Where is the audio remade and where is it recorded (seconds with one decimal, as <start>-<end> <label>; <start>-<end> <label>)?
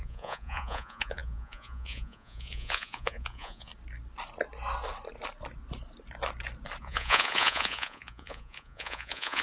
0.0-3.7 remade; 3.7-6.8 recorded; 6.8-9.4 remade